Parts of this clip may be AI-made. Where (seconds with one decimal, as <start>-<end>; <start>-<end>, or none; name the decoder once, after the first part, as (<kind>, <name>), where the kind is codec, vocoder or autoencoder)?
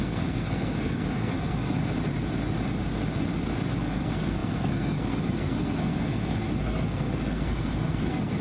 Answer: 0.0-1.8 (codec, SNAC); 3.8-8.4